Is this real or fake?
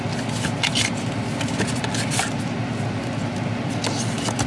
real